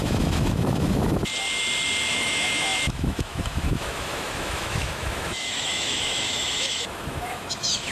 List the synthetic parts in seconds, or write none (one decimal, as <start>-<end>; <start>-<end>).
0.0-1.3; 2.1-7.9